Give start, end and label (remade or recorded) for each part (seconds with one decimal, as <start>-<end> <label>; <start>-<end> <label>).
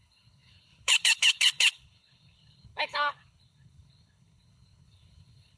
0.0-5.6 remade